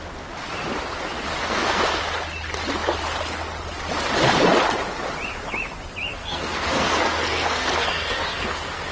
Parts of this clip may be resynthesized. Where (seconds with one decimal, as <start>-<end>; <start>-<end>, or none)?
1.4-2.0; 6.1-8.9